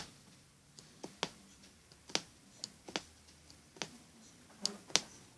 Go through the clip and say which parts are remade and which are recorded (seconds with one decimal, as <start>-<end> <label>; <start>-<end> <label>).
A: 0.0-5.4 recorded